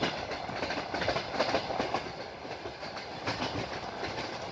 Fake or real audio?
real